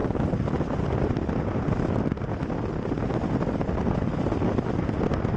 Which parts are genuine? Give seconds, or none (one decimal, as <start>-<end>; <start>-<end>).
3.0-5.4